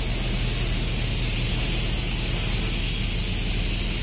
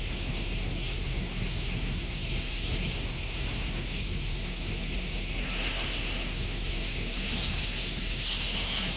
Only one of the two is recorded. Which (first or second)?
first